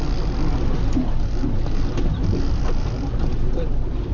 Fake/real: real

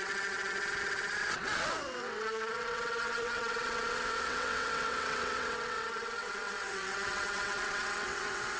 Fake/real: fake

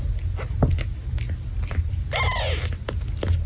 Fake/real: real